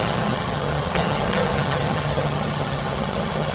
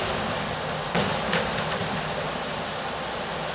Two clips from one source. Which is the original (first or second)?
second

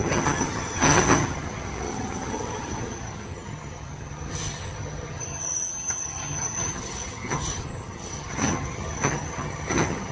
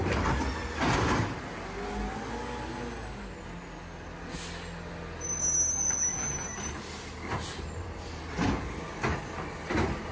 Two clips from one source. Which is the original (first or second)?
second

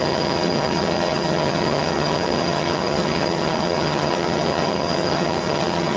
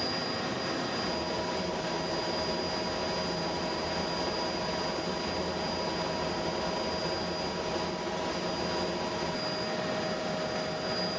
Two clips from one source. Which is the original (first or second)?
second